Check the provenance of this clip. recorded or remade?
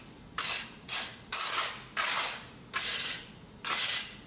recorded